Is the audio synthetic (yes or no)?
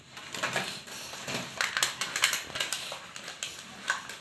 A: no